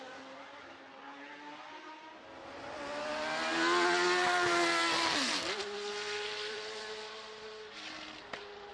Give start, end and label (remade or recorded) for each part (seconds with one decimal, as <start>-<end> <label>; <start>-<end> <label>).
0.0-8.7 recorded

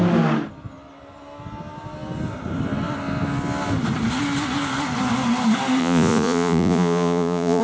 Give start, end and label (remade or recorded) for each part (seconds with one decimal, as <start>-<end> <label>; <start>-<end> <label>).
0.0-5.8 recorded; 5.8-7.6 remade

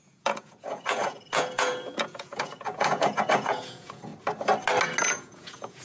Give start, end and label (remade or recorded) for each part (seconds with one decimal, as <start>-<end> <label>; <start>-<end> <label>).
0.0-4.1 remade; 4.1-5.0 recorded; 5.0-5.8 remade

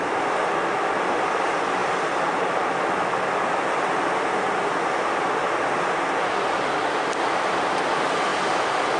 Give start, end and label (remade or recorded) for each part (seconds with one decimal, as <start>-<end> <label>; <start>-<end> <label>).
0.0-9.0 recorded

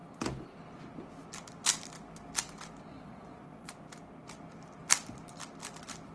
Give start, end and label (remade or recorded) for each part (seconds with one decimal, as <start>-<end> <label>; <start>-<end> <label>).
0.0-2.9 recorded; 2.9-3.7 remade; 3.7-6.1 recorded